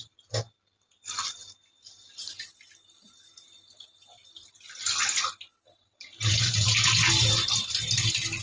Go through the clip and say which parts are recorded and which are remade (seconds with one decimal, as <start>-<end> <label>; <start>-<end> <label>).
0.0-8.4 recorded